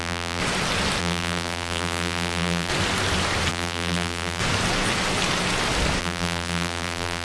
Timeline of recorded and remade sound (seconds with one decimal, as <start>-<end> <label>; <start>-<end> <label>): 0.0-0.4 remade; 0.4-1.0 recorded; 1.0-2.7 remade; 2.7-3.5 recorded; 3.5-4.4 remade; 4.4-6.0 recorded; 6.0-7.2 remade